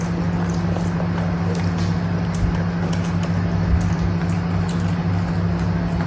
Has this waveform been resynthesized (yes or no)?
no